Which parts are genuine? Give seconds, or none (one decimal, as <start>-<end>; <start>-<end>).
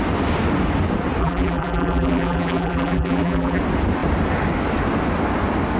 0.0-1.2; 3.6-5.8